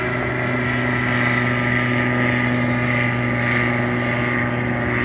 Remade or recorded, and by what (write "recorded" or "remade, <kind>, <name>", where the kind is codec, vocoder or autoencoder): recorded